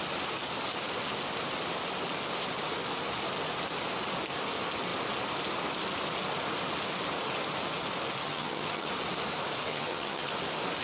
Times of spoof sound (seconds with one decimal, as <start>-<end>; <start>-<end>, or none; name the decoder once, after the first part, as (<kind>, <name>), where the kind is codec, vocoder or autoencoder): 8.2-8.9 (vocoder, HiFi-GAN); 9.7-10.3